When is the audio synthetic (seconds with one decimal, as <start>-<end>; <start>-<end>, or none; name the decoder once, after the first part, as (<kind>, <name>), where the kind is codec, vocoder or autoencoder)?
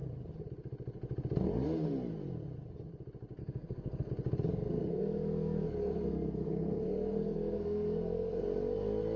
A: 3.4-4.1 (codec, SNAC); 4.5-8.4